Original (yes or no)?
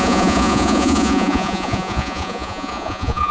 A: no